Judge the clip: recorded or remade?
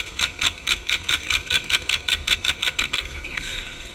remade